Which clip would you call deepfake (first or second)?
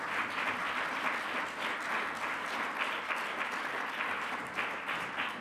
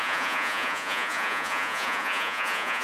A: second